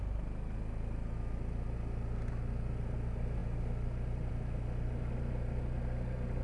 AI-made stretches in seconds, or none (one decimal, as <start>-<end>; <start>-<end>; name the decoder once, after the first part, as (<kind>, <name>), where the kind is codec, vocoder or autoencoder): none